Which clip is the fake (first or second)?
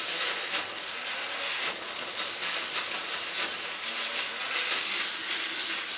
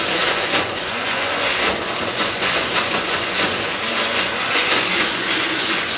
second